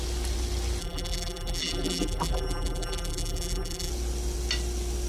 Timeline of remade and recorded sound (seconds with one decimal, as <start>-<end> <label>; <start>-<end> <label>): 0.0-0.8 recorded; 0.8-3.9 remade; 3.9-5.1 recorded